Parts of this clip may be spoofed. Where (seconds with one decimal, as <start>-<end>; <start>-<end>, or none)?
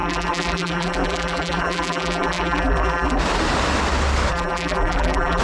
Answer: 0.0-3.2; 4.3-5.4